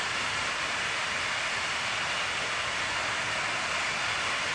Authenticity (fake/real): real